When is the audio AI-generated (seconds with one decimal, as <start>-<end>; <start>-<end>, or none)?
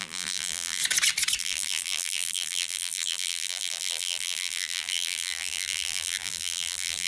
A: 0.0-0.8; 1.4-7.1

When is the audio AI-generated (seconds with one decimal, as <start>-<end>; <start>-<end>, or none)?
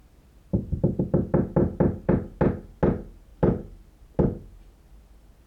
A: 0.0-1.0; 1.6-2.1; 3.3-3.9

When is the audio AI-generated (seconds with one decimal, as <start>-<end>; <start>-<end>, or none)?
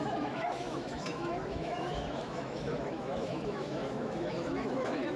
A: 0.0-5.2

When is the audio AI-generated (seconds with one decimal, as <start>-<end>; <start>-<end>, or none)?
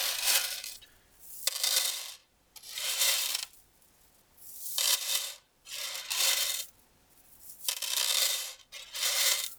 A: 2.2-7.2; 8.1-8.7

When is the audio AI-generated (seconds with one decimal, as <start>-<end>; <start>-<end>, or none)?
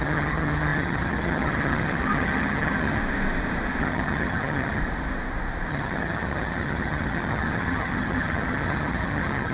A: 0.0-3.0; 3.8-4.8; 5.7-9.5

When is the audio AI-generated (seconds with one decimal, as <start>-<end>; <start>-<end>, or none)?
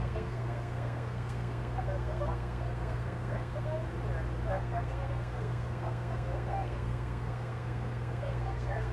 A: 0.0-3.8; 4.5-8.9